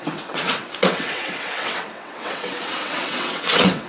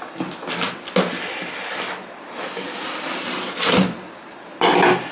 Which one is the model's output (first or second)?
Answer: first